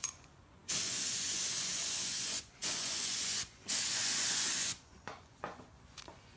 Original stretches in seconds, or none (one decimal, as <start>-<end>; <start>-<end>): none